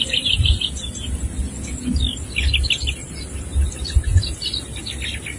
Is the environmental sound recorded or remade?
recorded